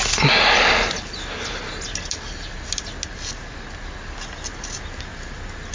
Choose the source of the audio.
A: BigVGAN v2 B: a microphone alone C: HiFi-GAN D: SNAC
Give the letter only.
B